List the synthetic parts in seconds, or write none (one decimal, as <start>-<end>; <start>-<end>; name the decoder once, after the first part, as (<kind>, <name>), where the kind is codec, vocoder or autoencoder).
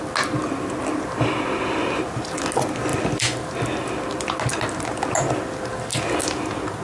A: none